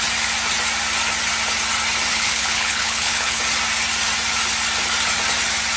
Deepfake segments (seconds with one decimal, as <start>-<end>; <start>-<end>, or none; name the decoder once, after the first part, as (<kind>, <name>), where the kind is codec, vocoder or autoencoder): 2.1-3.4 (codec, HILCodec)